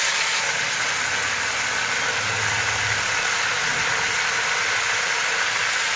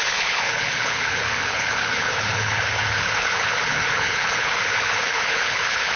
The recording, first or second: first